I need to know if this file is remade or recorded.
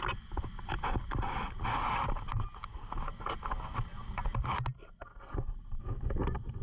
recorded